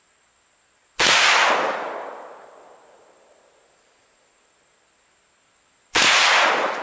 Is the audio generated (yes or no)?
no